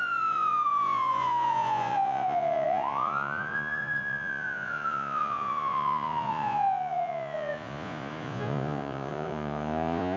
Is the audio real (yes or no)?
no